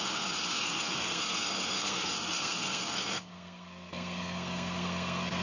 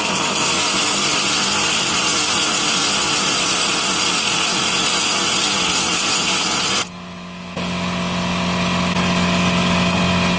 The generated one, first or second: first